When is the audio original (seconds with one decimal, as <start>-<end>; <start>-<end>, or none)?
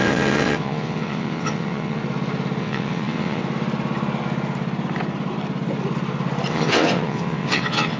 2.0-2.6; 3.4-6.5